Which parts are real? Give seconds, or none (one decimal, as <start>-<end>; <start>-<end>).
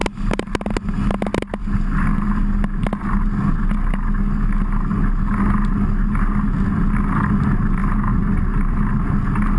0.0-9.6